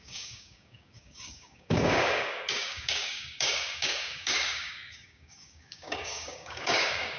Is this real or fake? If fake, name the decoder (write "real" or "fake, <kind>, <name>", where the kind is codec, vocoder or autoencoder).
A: fake, codec, DAC